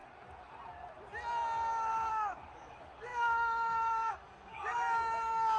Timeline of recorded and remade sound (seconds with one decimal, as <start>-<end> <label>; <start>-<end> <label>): 0.0-2.1 recorded; 2.1-5.6 remade